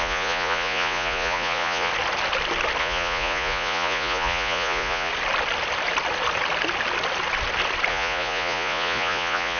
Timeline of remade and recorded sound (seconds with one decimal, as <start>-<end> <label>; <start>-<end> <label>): 0.0-1.9 remade; 1.9-2.8 recorded; 2.8-5.1 remade; 5.1-7.9 recorded; 7.9-9.6 remade